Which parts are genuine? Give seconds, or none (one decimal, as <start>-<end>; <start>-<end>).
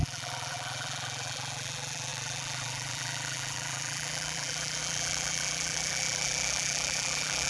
none